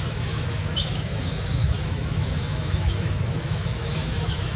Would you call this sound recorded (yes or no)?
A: no